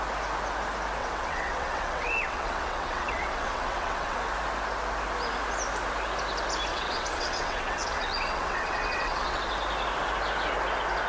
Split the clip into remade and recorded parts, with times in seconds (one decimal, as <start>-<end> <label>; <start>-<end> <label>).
0.0-1.0 recorded; 1.0-4.2 remade; 4.2-6.7 recorded; 6.7-9.4 remade; 9.4-11.1 recorded